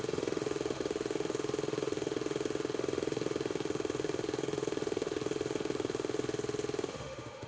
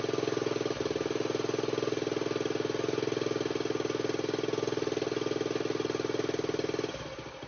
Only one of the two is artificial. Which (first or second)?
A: first